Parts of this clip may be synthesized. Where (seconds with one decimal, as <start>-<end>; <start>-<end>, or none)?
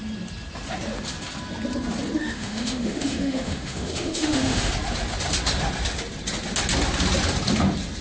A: 2.2-4.7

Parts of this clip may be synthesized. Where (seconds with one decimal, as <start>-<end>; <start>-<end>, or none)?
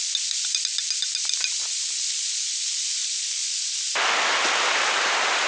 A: 0.0-3.4; 4.7-5.5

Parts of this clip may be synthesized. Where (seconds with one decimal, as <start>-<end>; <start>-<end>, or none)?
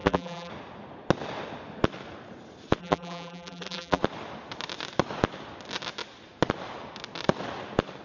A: 0.0-0.5; 2.8-4.0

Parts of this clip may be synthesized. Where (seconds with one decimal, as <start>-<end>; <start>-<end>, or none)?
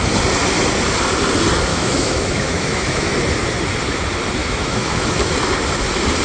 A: 1.7-3.1; 4.4-5.2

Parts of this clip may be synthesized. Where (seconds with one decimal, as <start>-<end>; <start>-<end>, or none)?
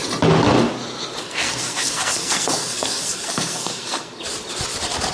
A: 1.2-4.2